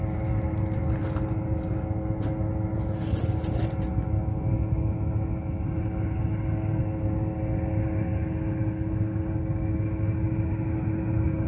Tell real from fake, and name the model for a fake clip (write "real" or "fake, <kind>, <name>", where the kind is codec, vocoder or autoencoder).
real